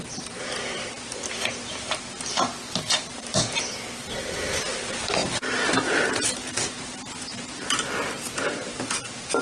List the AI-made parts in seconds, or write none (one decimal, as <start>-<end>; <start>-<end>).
0.0-2.3; 2.8-5.2; 6.8-7.3; 8.7-9.4